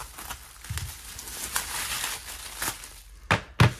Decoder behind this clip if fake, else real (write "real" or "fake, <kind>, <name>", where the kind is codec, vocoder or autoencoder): real